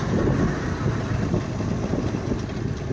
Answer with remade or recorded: recorded